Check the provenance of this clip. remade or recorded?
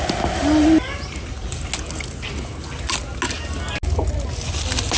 recorded